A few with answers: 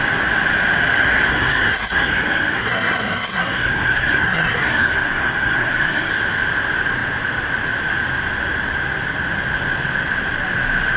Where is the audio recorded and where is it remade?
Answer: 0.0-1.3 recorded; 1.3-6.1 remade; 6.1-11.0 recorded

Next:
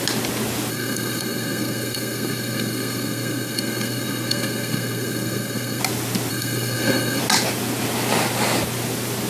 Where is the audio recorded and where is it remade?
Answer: 0.0-0.7 recorded; 0.7-5.8 remade; 5.8-6.3 recorded; 6.3-7.2 remade; 7.2-9.3 recorded